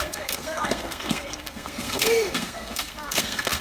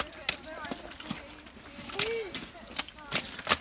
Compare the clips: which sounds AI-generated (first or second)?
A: first